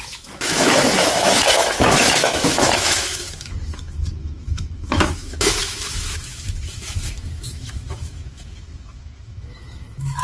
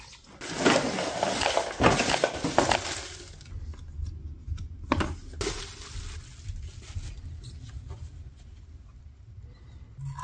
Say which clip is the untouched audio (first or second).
second